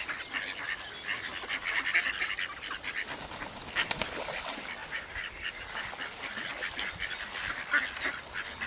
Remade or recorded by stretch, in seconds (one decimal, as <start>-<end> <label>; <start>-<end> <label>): 0.0-4.8 recorded; 4.8-5.8 remade; 5.8-8.7 recorded